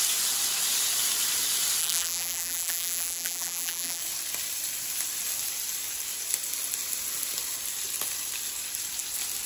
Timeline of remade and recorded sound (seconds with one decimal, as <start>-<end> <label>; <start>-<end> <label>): 0.0-1.8 recorded; 1.8-4.0 remade; 4.0-9.5 recorded